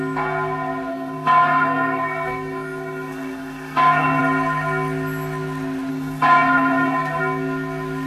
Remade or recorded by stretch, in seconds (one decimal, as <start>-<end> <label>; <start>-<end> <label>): 0.0-0.9 recorded; 0.9-4.2 remade; 4.2-5.9 recorded; 5.9-7.2 remade; 7.2-8.1 recorded